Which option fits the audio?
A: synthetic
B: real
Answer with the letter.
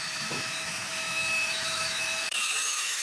A